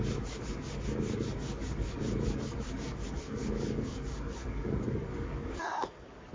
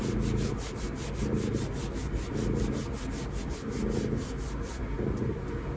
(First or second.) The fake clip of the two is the first